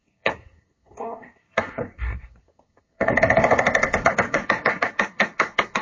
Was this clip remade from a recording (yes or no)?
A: yes